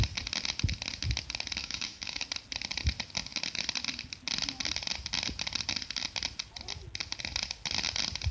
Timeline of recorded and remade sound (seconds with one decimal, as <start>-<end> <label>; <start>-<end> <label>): 0.0-1.6 recorded; 1.6-2.2 remade; 2.2-8.3 recorded